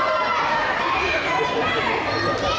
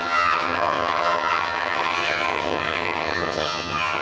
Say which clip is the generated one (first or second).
second